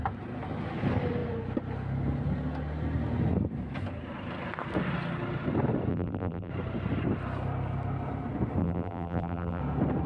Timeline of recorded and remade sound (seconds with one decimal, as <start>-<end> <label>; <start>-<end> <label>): 0.0-5.9 recorded; 5.9-6.5 remade; 6.5-8.6 recorded; 8.6-9.6 remade; 9.6-10.1 recorded